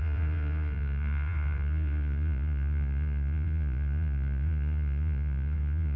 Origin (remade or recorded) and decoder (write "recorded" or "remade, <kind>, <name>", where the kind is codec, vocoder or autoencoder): remade, vocoder, Vocos